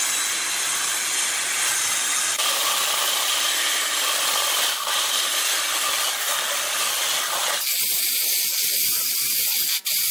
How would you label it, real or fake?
real